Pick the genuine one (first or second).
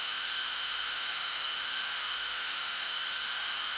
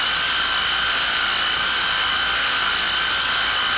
second